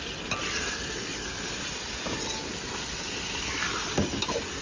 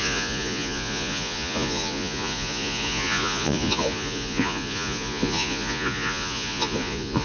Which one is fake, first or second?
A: second